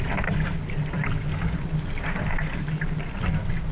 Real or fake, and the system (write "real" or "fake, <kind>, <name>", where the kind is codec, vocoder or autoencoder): real